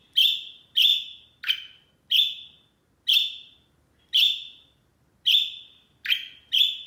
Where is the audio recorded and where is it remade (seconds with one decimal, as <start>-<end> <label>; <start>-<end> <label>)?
0.0-6.9 recorded